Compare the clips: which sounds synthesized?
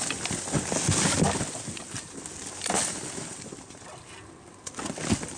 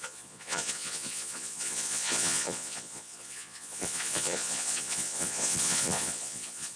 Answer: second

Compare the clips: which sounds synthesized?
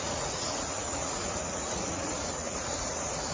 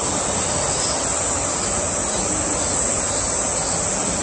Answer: first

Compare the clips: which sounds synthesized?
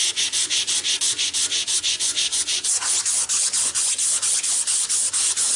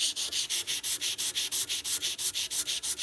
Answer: first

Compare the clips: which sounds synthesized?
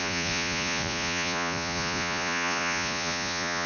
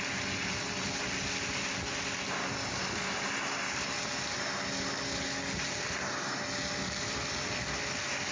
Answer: first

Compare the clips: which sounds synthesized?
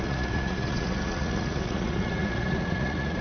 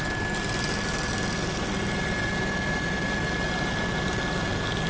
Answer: first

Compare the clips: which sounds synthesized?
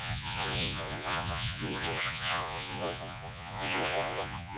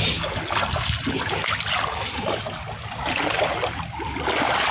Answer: first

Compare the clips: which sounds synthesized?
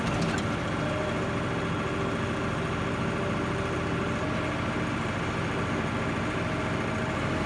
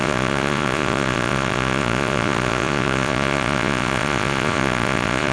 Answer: second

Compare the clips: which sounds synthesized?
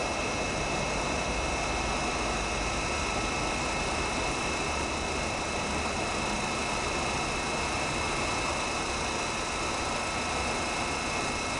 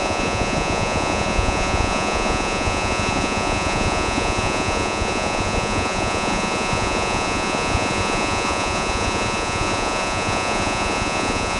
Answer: second